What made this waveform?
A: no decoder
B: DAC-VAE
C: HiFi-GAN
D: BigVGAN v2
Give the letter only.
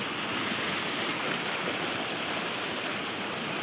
A